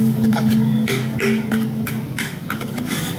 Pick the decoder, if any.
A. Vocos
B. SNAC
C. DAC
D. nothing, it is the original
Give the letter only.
C